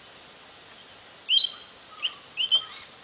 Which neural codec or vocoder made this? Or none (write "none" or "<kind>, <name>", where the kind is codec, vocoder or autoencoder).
none